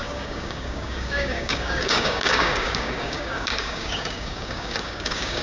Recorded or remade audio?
remade